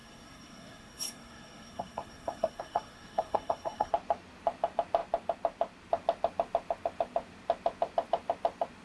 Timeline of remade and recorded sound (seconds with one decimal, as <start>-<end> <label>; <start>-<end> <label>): 0.0-3.9 remade; 3.9-8.8 recorded